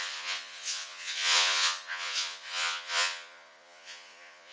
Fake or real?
fake